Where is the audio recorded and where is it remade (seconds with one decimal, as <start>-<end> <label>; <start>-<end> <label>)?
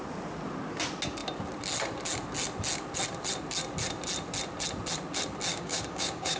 0.0-5.5 recorded; 5.5-6.4 remade